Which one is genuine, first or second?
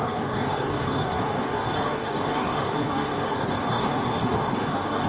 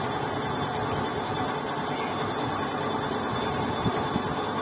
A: second